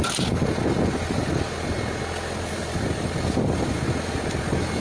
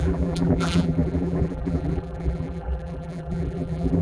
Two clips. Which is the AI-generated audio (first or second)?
second